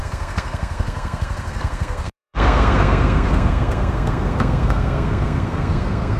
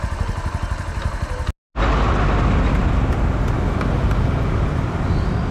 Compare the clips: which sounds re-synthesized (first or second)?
first